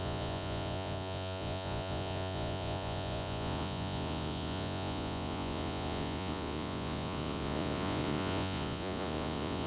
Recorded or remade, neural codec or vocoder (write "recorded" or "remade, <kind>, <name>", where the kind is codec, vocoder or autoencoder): remade, vocoder, Vocos